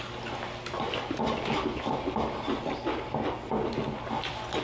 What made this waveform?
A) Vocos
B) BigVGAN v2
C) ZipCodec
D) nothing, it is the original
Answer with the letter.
D